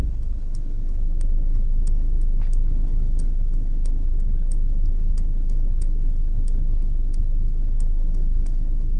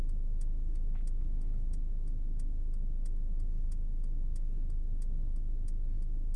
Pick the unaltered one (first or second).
second